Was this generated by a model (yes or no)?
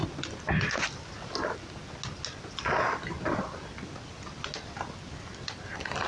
no